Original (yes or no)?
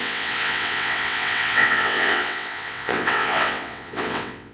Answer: no